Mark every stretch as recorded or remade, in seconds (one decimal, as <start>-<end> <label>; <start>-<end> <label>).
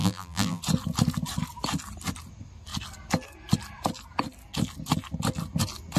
0.0-0.6 remade; 0.6-6.0 recorded